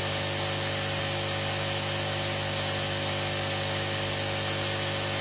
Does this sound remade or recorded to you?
recorded